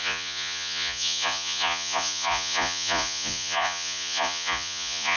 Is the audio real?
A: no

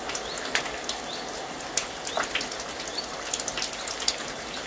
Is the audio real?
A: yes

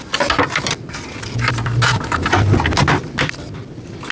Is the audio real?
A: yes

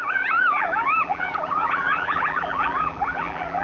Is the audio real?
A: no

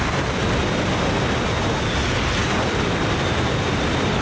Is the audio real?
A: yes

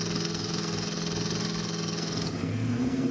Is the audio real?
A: no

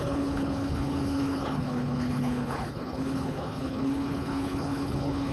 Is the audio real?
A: no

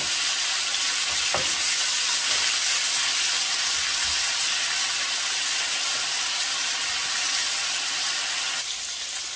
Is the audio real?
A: yes